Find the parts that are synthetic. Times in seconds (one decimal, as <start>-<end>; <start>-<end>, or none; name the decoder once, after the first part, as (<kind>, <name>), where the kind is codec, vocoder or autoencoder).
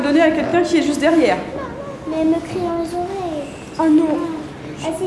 none